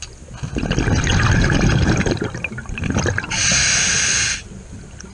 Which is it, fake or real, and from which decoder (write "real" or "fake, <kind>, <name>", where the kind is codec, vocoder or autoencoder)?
real